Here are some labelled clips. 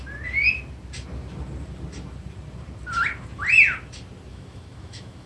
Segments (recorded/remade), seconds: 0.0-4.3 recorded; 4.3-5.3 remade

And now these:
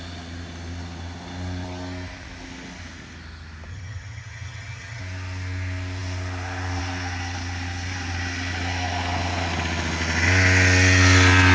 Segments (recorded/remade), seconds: 0.0-3.7 recorded; 3.7-5.0 remade; 5.0-11.5 recorded

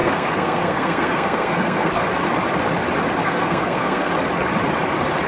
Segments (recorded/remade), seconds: 0.0-2.0 remade; 2.0-3.2 recorded; 3.2-4.1 remade; 4.1-5.3 recorded

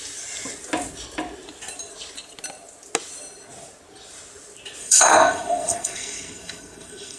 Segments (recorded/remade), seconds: 0.0-4.8 recorded; 4.8-7.2 remade

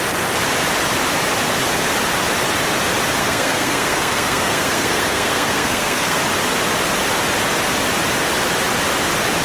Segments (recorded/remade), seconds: 0.0-3.2 recorded; 3.2-6.2 remade; 6.2-9.4 recorded

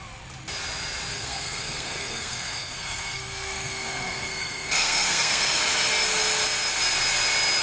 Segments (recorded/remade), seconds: 0.0-1.1 recorded; 1.1-5.6 remade; 5.6-7.6 recorded